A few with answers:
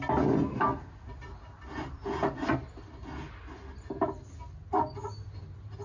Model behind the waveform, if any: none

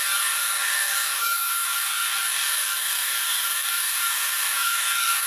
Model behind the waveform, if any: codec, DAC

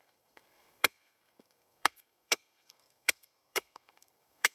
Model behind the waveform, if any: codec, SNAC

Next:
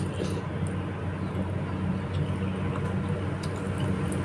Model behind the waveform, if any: none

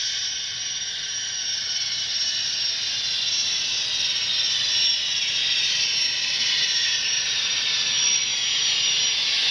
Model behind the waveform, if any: none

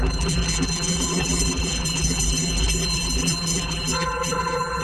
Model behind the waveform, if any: vocoder, BigVGAN v2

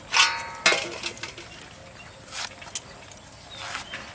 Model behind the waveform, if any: none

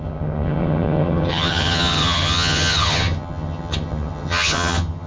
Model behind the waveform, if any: vocoder, HiFi-GAN